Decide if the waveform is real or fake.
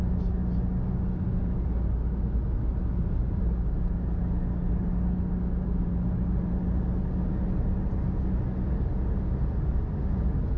real